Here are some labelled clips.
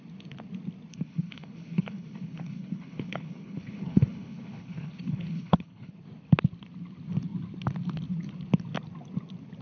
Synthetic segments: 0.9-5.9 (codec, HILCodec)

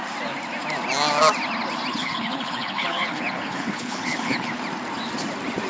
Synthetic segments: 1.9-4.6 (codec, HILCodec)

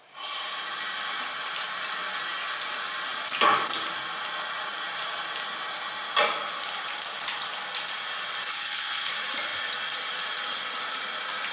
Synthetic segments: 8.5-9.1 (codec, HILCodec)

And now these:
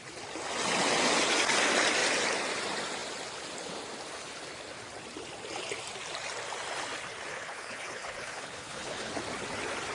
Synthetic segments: 7.3-9.1 (codec, HILCodec)

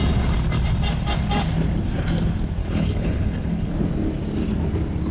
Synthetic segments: 2.6-3.7 (codec, HILCodec)